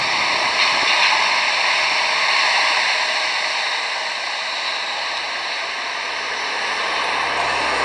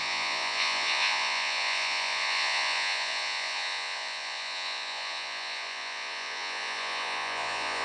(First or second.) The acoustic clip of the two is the first